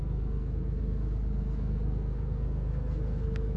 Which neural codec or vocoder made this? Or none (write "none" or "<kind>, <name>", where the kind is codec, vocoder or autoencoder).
codec, SNAC